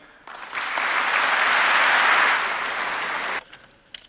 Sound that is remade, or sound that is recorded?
recorded